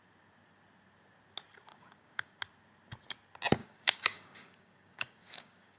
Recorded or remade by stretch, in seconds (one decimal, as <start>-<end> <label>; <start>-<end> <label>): 0.0-1.7 recorded; 1.7-2.4 remade; 2.4-3.6 recorded; 3.6-5.8 remade